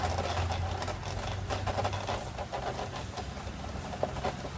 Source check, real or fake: real